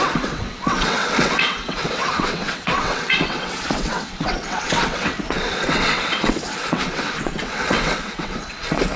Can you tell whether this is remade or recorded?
remade